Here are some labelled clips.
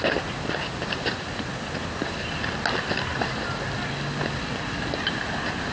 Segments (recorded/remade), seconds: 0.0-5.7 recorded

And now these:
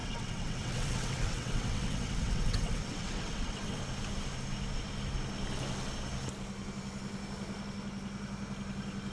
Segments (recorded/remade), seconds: 0.0-3.8 remade; 3.8-9.1 recorded

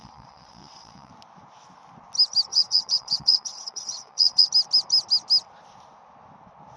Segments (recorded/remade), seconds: 0.0-1.1 remade; 1.1-2.5 recorded; 2.5-4.5 remade; 4.5-6.8 recorded

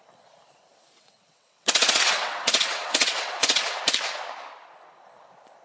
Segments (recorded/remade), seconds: 0.0-0.7 recorded; 0.7-3.8 remade; 3.8-5.6 recorded

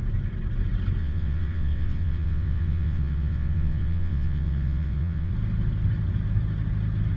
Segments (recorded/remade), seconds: 0.0-1.0 recorded; 1.0-5.3 remade; 5.3-7.2 recorded

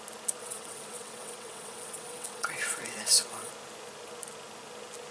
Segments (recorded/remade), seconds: 0.0-0.4 recorded; 0.4-3.5 remade; 3.5-5.1 recorded

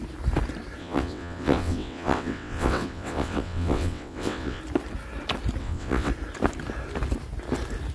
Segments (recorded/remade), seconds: 0.0-0.8 recorded; 0.8-4.6 remade; 4.6-5.6 recorded; 5.6-6.1 remade; 6.1-7.9 recorded